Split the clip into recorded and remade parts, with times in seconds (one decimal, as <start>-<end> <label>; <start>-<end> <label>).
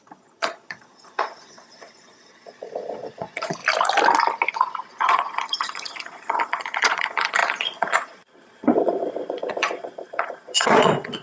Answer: 0.0-3.6 remade; 3.6-4.5 recorded; 4.5-11.2 remade